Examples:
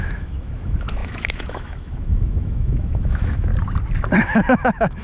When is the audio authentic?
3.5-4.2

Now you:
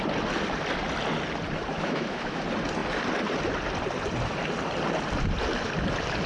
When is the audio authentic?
0.0-1.7; 2.4-6.3